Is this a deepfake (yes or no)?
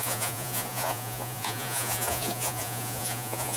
yes